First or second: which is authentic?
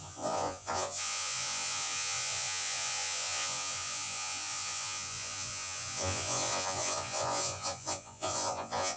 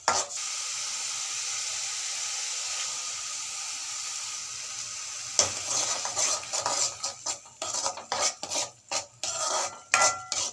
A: second